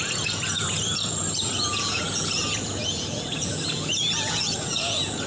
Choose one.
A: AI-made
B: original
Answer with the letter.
A